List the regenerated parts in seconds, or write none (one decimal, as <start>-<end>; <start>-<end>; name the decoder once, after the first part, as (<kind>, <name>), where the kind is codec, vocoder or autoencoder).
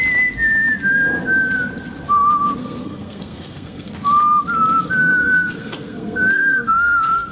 2.6-3.9 (codec, SNAC); 5.0-7.3